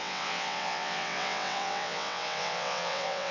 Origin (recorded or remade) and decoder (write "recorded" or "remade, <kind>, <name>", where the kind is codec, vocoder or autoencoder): remade, vocoder, WaveNeXt